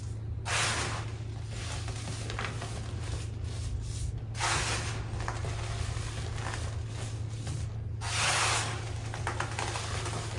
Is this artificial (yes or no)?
no